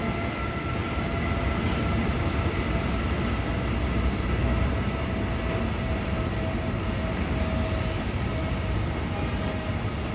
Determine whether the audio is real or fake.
real